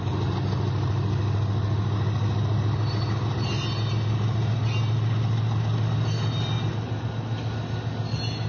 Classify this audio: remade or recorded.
recorded